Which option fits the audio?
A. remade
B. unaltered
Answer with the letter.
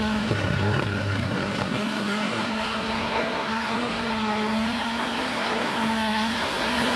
A